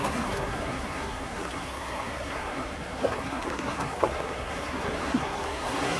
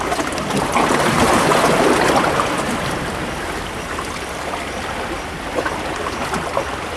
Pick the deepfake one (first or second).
first